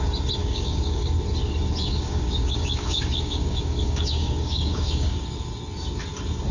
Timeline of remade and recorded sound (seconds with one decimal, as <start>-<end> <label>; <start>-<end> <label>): 0.0-0.4 recorded; 0.4-1.1 remade; 1.1-1.8 recorded; 1.8-5.2 remade; 5.2-6.5 recorded